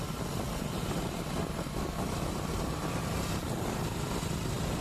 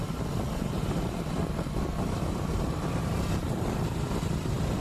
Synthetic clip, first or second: second